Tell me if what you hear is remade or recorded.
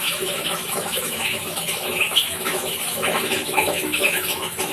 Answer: remade